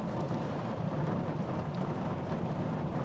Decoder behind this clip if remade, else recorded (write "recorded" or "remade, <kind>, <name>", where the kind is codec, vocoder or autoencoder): remade, vocoder, BigVGAN v2